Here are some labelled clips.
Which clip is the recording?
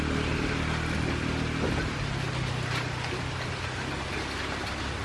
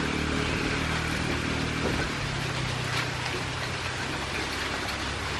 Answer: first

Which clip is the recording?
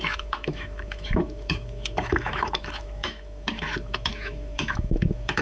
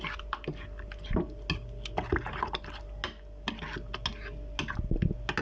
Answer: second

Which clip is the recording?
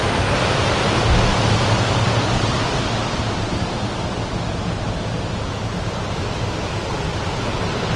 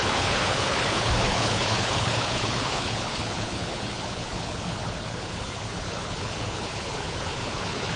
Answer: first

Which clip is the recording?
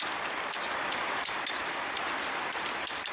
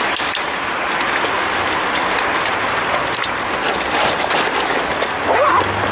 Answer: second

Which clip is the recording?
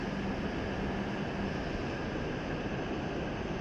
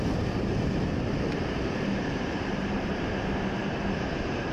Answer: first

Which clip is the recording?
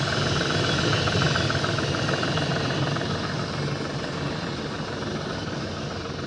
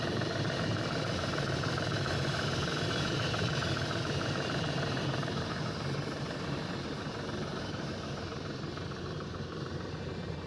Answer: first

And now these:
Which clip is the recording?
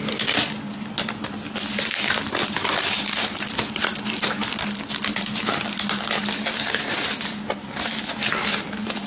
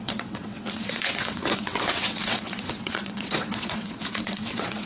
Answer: first